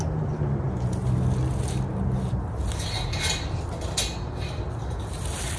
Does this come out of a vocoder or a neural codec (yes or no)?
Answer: no